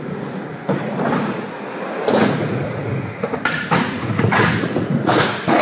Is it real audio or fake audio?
fake